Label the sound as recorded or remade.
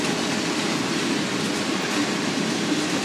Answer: recorded